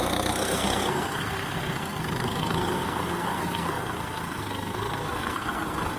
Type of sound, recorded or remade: remade